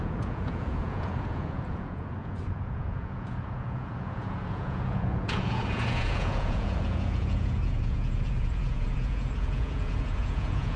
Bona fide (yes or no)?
no